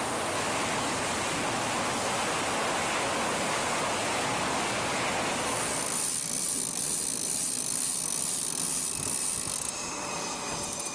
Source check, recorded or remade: recorded